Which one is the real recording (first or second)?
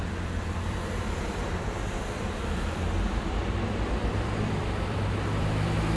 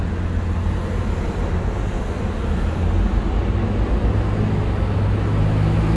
second